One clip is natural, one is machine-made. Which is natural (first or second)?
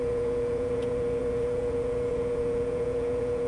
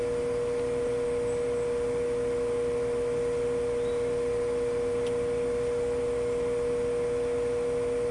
second